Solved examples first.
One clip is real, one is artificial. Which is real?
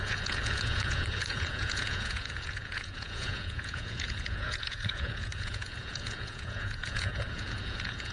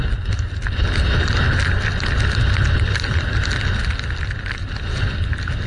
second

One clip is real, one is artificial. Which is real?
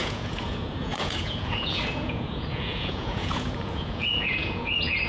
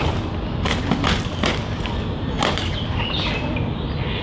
second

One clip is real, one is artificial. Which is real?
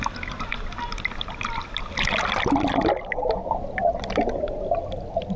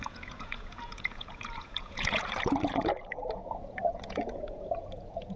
first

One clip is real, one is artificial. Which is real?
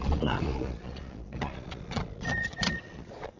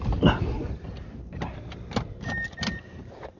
second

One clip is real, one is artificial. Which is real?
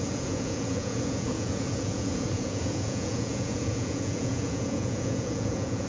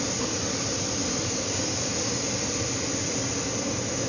second